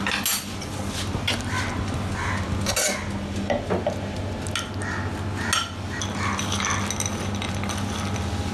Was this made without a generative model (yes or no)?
yes